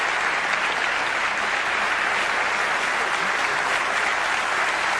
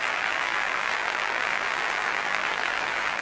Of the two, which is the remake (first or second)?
second